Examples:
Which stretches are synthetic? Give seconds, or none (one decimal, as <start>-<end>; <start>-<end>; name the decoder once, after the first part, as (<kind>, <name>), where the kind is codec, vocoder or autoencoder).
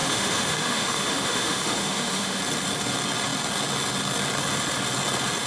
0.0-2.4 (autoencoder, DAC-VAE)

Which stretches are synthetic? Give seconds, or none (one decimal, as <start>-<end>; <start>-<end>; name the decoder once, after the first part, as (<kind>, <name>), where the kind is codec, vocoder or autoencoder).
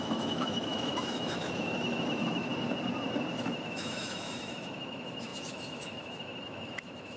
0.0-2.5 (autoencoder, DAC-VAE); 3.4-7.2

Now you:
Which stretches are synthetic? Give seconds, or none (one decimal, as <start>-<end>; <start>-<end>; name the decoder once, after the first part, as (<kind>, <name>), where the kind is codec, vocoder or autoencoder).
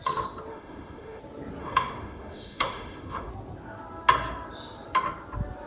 0.5-1.2 (autoencoder, DAC-VAE); 1.6-3.3